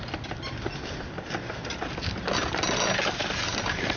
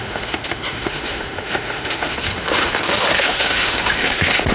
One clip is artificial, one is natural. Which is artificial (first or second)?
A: second